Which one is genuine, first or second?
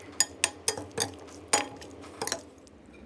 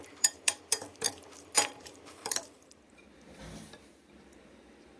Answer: first